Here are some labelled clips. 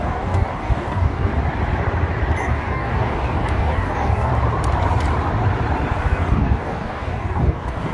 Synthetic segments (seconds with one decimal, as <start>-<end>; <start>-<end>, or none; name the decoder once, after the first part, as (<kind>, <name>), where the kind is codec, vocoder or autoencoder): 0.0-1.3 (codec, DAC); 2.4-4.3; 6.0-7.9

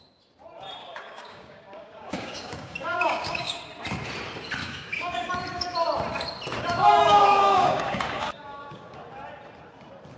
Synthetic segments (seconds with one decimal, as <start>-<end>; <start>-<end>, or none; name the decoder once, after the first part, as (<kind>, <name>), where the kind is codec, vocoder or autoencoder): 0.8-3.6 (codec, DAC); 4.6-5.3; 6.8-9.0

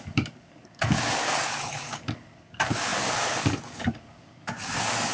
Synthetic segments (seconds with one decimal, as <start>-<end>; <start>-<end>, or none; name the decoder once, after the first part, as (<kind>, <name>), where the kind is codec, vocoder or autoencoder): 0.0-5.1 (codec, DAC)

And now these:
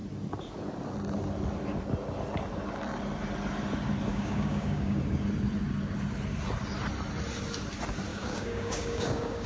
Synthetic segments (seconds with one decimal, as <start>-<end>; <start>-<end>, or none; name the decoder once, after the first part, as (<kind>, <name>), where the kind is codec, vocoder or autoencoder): 4.1-5.0 (codec, DAC); 8.1-9.5

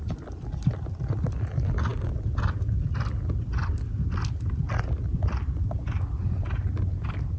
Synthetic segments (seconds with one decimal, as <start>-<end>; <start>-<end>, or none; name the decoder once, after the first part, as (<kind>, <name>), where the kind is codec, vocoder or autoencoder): none

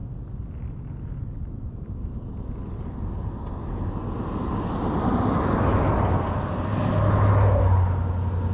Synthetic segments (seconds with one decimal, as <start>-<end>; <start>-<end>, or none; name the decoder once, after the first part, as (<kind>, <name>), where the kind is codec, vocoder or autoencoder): none

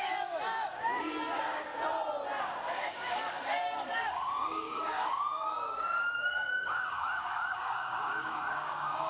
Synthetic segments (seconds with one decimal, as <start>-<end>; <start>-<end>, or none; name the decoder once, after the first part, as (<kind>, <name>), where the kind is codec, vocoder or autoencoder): 0.0-1.7 (codec, DAC); 2.4-9.1